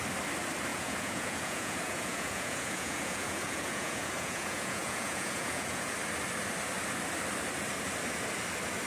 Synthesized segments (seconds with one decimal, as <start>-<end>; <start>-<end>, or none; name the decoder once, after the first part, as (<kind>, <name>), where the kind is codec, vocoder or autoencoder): 0.7-5.9 (vocoder, Vocos)